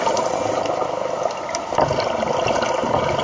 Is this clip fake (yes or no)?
no